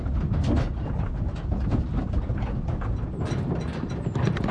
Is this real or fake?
real